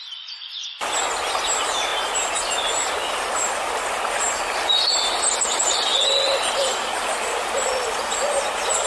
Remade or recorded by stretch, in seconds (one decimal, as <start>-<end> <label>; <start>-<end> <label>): 0.0-8.9 recorded